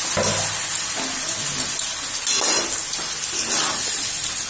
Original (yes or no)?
yes